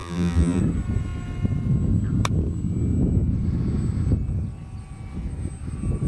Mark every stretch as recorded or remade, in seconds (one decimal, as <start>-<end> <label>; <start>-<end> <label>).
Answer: 0.0-0.6 remade; 0.6-6.1 recorded